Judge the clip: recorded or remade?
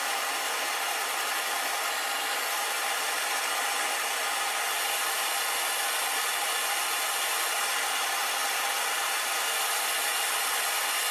recorded